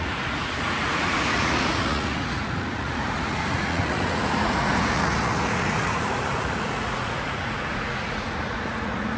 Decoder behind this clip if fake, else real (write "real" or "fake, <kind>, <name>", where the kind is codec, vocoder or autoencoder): fake, vocoder, Vocos